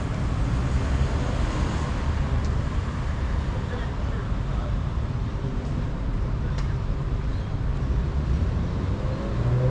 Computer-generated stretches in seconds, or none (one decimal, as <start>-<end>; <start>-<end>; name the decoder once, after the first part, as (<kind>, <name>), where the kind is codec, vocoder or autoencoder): 2.4-7.3 (vocoder, BigVGAN v2)